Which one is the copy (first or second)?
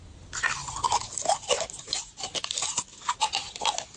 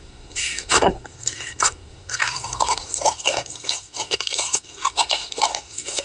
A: second